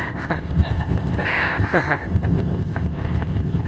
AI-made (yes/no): yes